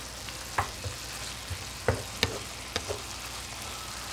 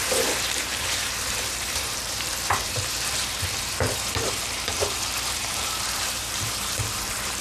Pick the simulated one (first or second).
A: second